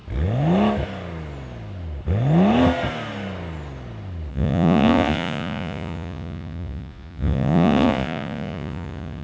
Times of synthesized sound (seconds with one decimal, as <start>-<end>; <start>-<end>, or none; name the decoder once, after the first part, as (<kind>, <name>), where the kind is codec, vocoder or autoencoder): 4.3-9.2 (vocoder, Vocos)